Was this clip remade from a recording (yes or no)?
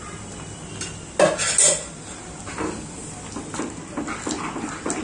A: no